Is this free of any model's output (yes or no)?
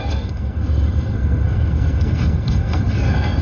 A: no